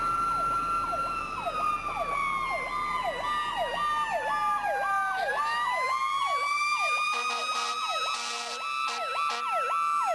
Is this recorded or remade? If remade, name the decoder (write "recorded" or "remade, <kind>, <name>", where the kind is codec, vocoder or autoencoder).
recorded